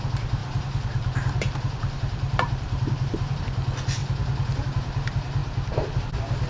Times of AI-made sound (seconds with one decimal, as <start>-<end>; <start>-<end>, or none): 0.4-3.4